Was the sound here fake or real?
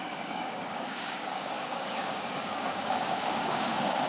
fake